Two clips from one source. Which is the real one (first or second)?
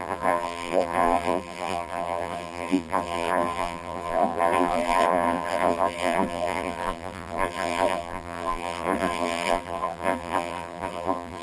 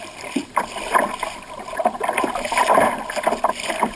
second